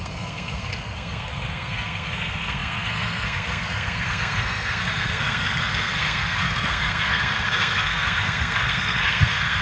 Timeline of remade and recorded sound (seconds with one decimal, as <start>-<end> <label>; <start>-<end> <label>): 0.0-9.6 remade